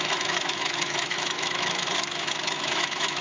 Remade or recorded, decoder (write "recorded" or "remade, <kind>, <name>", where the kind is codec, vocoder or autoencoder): remade, autoencoder, DAC-VAE